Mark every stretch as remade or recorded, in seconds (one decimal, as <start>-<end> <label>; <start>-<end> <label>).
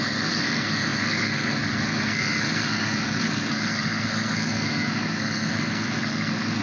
0.0-6.6 remade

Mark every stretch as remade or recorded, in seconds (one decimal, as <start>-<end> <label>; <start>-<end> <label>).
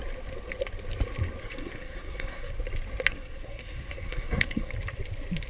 0.0-1.4 recorded; 1.4-2.5 remade; 2.5-3.1 recorded; 3.1-4.7 remade; 4.7-5.5 recorded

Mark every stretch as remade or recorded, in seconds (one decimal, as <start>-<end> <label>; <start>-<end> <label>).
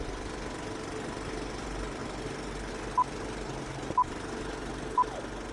0.0-5.5 recorded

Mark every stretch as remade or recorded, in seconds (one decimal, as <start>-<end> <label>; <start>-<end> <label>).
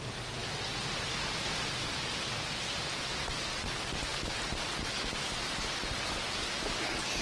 0.0-7.2 recorded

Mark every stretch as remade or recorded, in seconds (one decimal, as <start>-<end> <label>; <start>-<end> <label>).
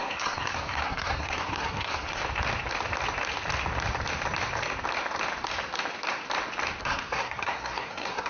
0.0-2.2 remade; 2.2-6.8 recorded; 6.8-8.3 remade